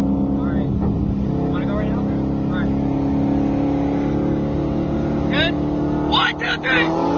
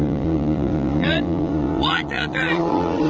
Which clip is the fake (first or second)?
second